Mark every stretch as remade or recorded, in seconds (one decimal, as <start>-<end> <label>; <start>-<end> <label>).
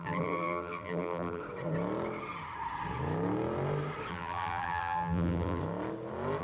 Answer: 0.0-1.4 remade; 1.4-4.1 recorded; 4.1-5.6 remade; 5.6-6.4 recorded